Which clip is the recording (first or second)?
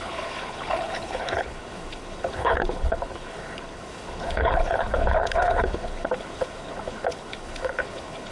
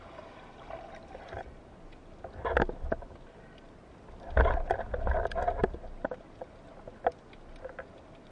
second